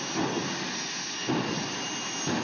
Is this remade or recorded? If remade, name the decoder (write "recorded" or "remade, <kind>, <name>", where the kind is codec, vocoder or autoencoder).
recorded